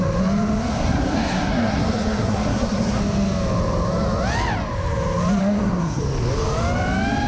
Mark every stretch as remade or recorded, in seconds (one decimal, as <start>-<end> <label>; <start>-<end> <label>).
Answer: 0.0-0.7 recorded; 0.7-3.0 remade; 3.0-5.4 recorded; 5.4-6.0 remade; 6.0-7.3 recorded